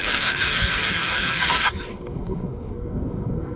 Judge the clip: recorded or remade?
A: remade